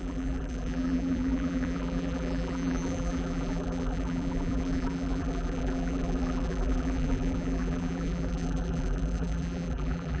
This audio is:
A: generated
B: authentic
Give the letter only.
A